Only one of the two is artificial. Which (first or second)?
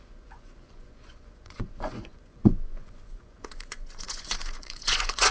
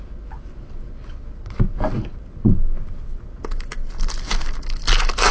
first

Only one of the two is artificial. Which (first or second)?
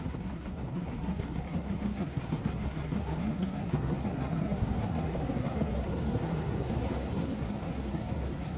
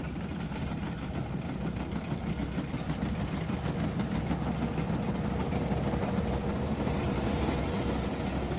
first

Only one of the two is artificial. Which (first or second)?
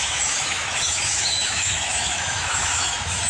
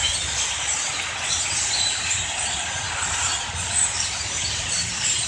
first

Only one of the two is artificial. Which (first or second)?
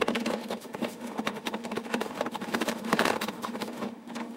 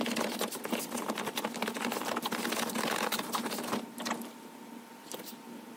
first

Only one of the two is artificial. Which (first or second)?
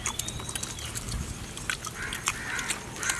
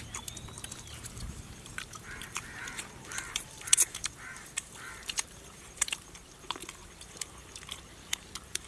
second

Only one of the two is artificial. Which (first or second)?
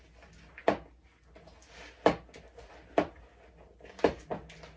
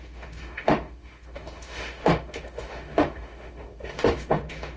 second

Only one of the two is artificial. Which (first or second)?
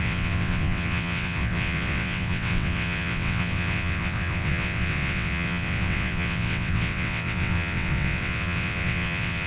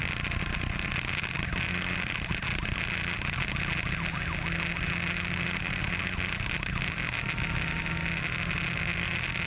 first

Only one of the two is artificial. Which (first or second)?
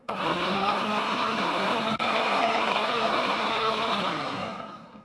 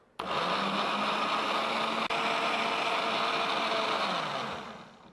first